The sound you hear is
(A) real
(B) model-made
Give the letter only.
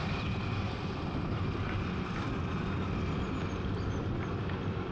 B